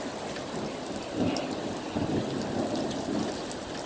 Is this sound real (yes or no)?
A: yes